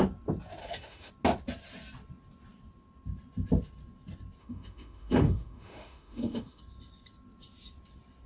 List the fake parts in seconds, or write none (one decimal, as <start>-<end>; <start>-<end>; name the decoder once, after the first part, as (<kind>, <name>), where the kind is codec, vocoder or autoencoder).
0.6-1.1 (autoencoder, DAC-VAE); 4.4-6.6